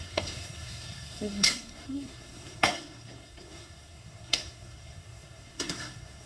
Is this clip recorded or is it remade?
remade